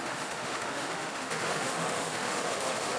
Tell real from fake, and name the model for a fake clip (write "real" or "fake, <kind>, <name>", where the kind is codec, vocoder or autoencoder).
fake, autoencoder, DAC-VAE